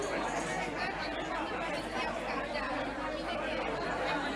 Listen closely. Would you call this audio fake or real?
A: fake